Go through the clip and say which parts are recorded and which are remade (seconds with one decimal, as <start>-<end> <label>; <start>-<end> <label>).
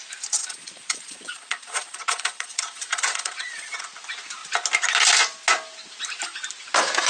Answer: 0.0-0.4 recorded; 0.4-3.8 remade; 3.8-7.1 recorded